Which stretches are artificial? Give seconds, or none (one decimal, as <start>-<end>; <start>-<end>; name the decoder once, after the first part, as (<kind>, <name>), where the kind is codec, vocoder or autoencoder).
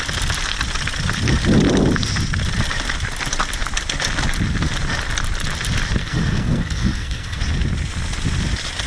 6.0-7.4 (codec, SNAC)